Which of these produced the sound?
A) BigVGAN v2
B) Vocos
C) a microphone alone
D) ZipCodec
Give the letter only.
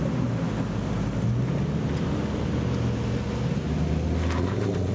C